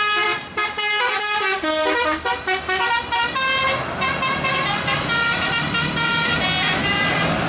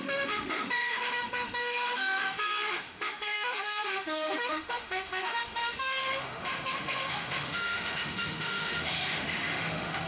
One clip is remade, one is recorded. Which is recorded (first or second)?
first